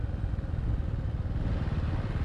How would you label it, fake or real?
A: real